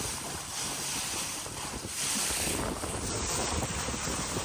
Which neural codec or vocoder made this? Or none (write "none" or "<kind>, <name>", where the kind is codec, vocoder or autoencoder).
none